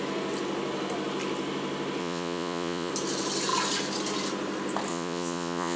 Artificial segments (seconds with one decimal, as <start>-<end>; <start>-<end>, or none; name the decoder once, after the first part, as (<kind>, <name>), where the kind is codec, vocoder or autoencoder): 2.0-2.9 (vocoder, Vocos); 4.9-5.8